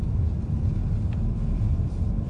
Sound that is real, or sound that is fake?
real